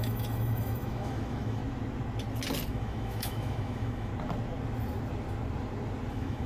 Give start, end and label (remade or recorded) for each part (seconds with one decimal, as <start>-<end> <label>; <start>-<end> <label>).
0.0-1.6 remade; 1.6-2.7 recorded; 2.7-4.1 remade; 4.1-6.1 recorded; 6.1-6.5 remade